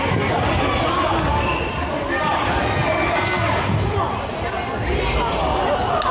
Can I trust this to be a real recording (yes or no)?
yes